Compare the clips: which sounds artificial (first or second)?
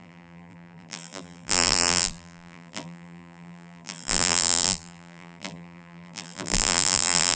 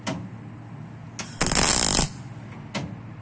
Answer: first